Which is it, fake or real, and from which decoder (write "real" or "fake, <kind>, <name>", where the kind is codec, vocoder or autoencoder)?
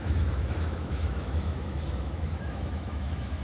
fake, autoencoder, DAC-VAE